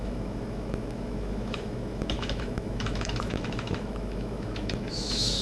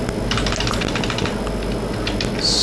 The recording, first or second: second